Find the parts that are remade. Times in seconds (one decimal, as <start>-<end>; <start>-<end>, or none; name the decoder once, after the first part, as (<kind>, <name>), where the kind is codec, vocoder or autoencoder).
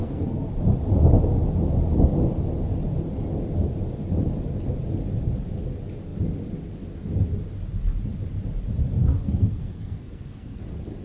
0.0-0.5 (codec, SNAC); 9.0-10.6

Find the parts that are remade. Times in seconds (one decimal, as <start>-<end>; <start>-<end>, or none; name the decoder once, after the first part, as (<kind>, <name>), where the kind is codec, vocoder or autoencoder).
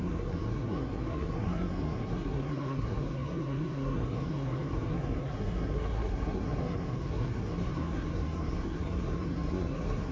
0.0-10.1 (codec, SNAC)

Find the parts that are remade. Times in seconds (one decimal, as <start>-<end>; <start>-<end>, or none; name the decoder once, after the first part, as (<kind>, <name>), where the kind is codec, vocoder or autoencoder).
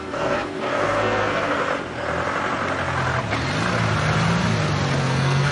0.0-1.7 (codec, SNAC); 5.0-5.5